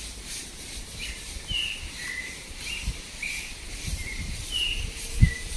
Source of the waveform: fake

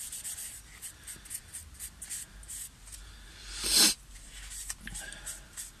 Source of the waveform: real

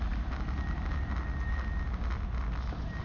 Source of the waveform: real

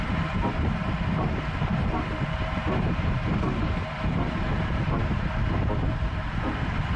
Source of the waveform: fake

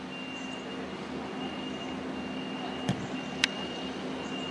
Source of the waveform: real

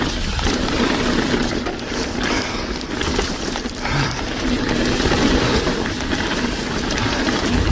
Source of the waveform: fake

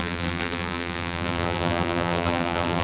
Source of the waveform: fake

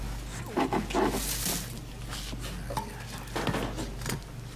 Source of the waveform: real